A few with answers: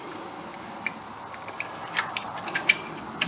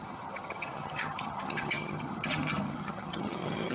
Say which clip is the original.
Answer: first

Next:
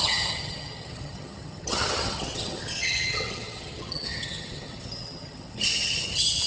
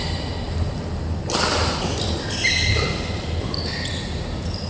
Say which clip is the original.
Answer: second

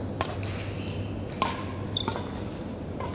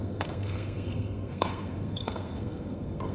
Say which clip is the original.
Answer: first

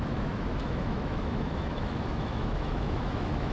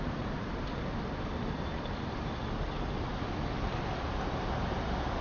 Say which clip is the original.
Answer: second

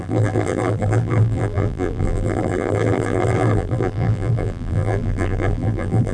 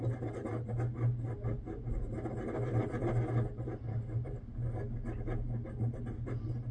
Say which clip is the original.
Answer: second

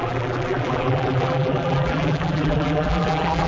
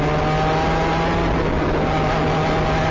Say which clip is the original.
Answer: second